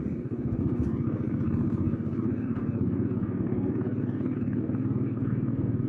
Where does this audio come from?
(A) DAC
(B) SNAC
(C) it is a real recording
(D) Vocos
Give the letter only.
A